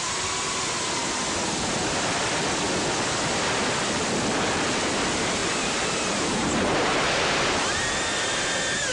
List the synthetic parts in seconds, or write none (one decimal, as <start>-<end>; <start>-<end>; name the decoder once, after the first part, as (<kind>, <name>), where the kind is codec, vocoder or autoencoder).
5.4-7.9 (vocoder, BigVGAN v2)